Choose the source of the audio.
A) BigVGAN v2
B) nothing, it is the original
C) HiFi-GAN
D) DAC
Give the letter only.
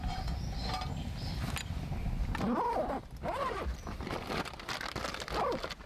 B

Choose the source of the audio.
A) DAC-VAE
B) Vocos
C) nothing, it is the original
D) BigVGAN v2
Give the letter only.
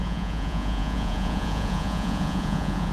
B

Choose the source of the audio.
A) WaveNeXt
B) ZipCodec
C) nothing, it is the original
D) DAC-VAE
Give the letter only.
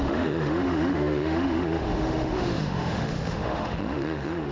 D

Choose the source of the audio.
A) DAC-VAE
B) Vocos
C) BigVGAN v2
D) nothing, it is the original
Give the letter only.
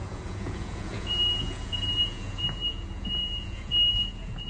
B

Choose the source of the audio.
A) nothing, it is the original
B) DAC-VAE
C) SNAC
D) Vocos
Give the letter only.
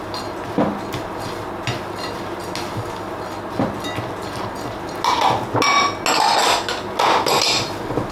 A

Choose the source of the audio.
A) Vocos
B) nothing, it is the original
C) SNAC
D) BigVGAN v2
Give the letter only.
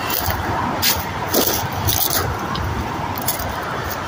B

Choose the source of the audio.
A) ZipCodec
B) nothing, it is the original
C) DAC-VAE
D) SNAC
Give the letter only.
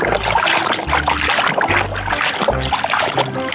B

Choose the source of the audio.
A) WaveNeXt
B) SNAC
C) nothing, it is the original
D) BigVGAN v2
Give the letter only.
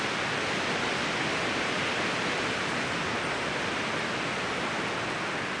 C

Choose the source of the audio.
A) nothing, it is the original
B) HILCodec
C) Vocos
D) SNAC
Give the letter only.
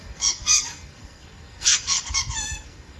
D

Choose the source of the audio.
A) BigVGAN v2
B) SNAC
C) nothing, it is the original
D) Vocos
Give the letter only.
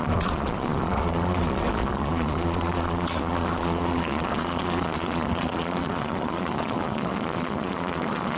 D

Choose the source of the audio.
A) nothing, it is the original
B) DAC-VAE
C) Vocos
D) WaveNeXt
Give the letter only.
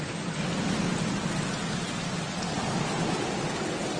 A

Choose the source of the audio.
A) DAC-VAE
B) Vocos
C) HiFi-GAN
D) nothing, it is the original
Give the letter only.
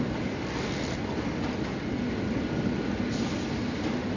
D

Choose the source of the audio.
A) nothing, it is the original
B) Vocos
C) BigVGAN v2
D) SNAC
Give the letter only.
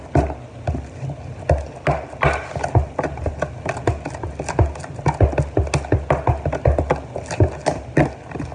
A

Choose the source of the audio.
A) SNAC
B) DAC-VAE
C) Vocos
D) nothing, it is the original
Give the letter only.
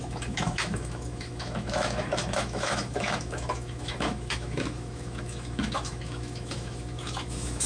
B